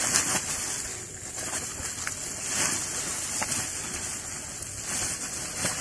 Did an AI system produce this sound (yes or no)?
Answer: no